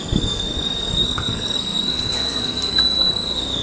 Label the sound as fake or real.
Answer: fake